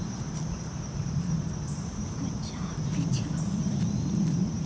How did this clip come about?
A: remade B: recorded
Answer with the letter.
A